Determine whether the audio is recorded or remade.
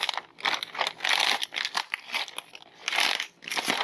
recorded